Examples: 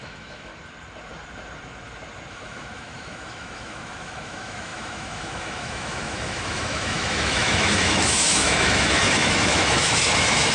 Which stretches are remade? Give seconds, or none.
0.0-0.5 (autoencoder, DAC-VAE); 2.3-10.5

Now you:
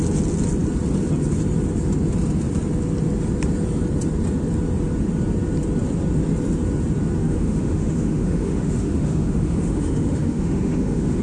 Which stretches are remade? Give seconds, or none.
7.2-11.2 (autoencoder, DAC-VAE)

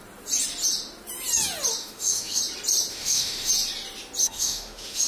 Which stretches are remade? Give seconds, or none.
1.8-2.4 (autoencoder, DAC-VAE); 2.9-3.5; 4.2-5.1

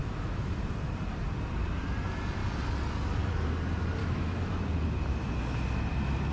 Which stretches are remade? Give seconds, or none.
0.0-0.5 (autoencoder, DAC-VAE); 4.0-4.6